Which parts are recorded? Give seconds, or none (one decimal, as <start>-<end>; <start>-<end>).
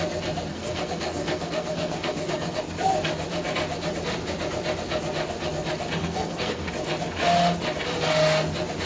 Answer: 0.0-0.5; 2.6-6.0; 6.7-8.9